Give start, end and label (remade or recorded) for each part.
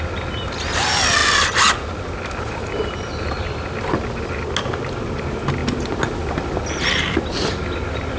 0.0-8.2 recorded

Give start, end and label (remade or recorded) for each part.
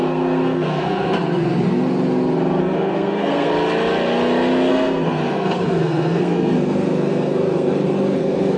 0.0-1.2 remade; 1.2-2.6 recorded; 2.6-3.5 remade; 3.5-4.7 recorded; 4.7-8.6 remade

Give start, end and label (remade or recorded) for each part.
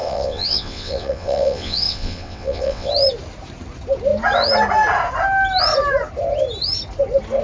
0.0-2.9 remade; 2.9-7.4 recorded